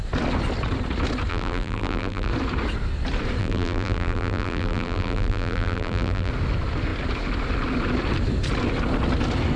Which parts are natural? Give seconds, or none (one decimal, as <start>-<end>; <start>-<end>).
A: 0.0-1.3; 2.3-3.4; 6.3-9.6